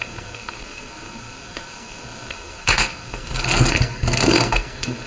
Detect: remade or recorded remade